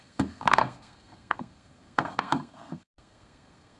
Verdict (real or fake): fake